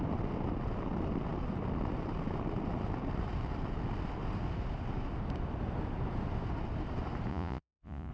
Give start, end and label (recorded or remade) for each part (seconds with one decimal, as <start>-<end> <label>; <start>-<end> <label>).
0.0-7.3 recorded; 7.3-8.1 remade

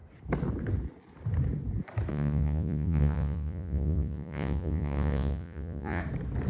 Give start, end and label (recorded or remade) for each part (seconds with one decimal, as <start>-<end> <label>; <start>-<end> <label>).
0.0-2.1 recorded; 2.1-6.0 remade; 6.0-6.5 recorded

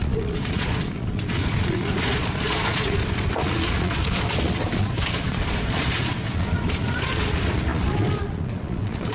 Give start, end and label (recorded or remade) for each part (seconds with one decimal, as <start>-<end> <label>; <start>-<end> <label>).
0.0-9.1 remade

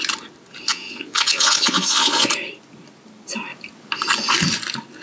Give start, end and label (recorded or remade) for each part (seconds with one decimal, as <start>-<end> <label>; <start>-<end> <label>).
0.0-0.7 recorded; 0.7-2.3 remade; 2.3-5.0 recorded

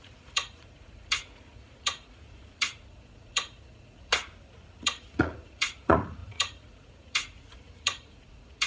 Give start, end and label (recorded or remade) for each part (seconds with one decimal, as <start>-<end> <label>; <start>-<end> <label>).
0.0-4.1 remade; 4.1-4.8 recorded; 4.8-8.7 remade

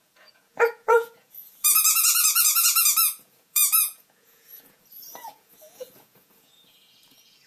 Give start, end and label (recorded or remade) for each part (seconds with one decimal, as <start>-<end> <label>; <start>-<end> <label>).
0.0-7.5 remade

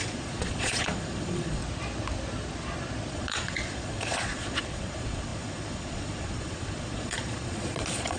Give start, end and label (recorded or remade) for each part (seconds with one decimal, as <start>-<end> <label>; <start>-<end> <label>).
0.0-1.6 remade; 1.6-3.1 recorded; 3.1-8.2 remade

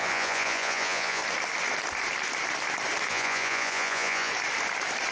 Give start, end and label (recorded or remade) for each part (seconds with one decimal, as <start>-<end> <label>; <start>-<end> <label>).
0.0-1.2 remade; 1.2-3.1 recorded; 3.1-4.3 remade; 4.3-5.1 recorded